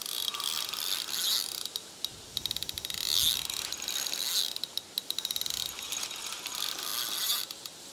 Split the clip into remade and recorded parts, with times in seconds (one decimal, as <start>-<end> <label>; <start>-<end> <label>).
0.0-7.9 recorded